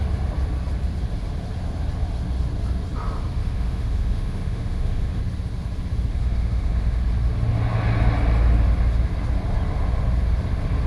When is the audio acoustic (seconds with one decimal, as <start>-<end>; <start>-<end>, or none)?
0.0-3.4; 5.2-6.1; 7.0-10.9